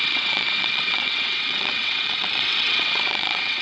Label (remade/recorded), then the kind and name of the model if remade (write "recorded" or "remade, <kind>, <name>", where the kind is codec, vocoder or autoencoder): remade, vocoder, WaveNeXt